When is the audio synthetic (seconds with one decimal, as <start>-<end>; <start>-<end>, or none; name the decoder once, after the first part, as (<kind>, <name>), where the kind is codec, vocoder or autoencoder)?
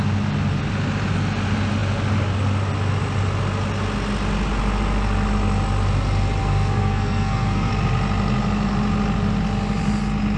6.4-7.7 (codec, SNAC)